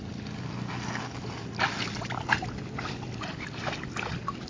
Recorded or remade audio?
recorded